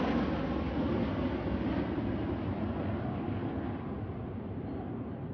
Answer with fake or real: real